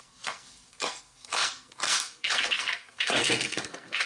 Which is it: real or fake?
fake